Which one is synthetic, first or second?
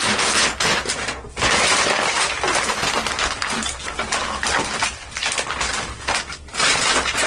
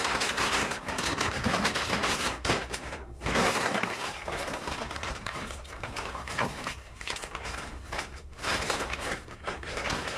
second